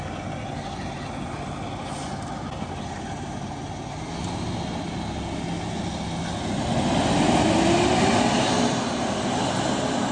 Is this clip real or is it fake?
real